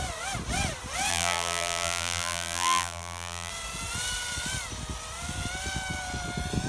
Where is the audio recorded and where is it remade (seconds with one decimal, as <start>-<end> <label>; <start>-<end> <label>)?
0.0-1.1 recorded; 1.1-3.5 remade; 3.5-6.7 recorded